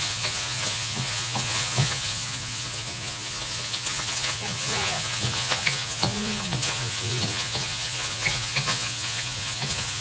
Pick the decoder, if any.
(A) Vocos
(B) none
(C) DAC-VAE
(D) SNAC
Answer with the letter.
A